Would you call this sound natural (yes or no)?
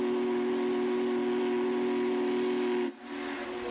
yes